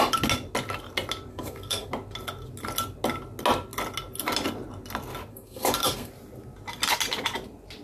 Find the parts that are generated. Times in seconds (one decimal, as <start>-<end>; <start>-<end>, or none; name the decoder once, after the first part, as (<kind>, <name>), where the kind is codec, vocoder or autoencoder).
1.3-1.9 (codec, SNAC); 5.3-6.1